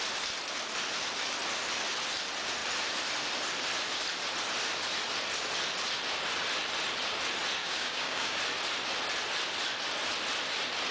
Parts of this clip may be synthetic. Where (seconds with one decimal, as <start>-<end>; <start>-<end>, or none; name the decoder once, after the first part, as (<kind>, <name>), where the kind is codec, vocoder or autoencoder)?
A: 7.6-8.4 (codec, DAC)